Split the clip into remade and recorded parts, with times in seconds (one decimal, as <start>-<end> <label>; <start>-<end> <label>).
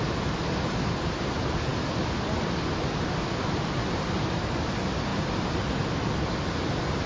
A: 0.0-7.1 recorded